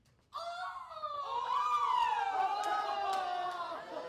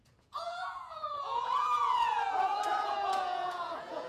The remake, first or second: second